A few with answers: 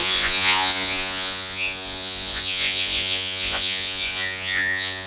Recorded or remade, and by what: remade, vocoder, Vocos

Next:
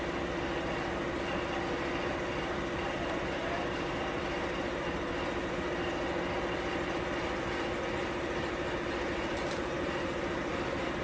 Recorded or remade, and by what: recorded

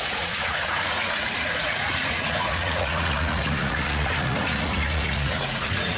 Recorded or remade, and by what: remade, vocoder, Vocos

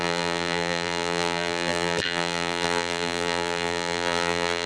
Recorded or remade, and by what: remade, vocoder, BigVGAN v2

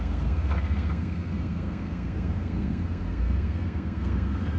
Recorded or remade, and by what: remade, codec, SNAC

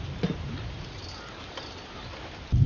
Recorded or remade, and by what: recorded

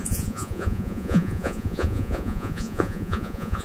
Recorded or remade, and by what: remade, vocoder, Vocos